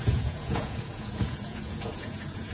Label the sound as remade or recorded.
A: remade